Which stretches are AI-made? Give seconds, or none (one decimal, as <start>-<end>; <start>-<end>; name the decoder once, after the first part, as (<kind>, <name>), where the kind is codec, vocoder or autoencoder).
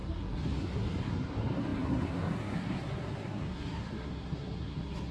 0.0-5.1 (codec, SNAC)